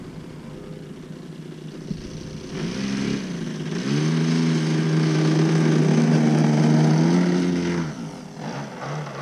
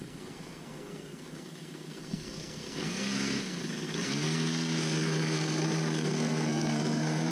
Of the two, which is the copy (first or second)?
second